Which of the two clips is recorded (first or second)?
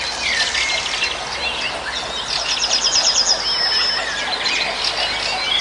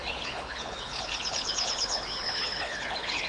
first